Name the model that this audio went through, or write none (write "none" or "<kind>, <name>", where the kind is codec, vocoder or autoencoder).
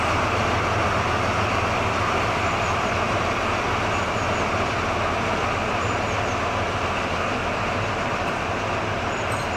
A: none